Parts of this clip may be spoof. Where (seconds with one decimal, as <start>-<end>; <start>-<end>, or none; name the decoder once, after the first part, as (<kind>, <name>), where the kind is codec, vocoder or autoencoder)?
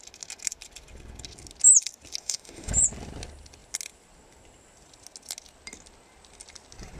2.2-2.7 (autoencoder, DAC-VAE)